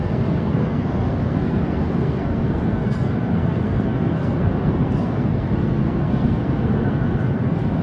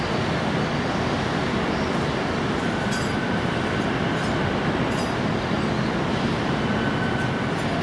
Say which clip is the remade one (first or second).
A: first